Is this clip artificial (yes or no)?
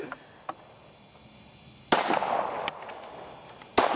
no